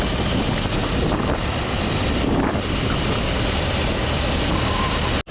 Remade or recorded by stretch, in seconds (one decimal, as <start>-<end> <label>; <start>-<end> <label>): 0.0-0.8 recorded; 0.8-4.0 remade; 4.0-5.3 recorded